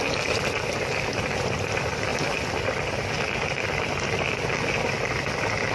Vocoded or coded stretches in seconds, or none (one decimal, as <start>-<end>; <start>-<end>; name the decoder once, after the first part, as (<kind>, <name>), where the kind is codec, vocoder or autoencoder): 0.0-2.1 (vocoder, BigVGAN v2)